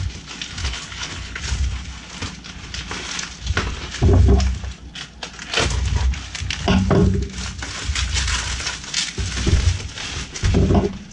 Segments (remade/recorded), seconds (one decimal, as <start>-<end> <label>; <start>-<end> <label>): 0.0-0.6 recorded; 0.6-1.4 remade; 1.4-11.1 recorded